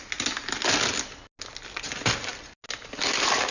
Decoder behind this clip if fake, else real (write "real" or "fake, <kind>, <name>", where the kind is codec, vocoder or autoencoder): real